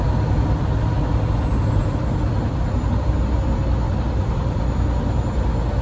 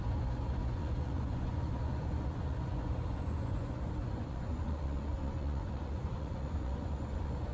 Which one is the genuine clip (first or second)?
first